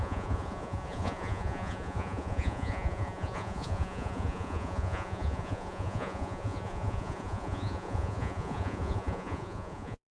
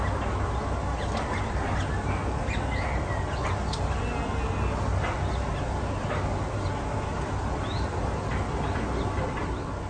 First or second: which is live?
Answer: second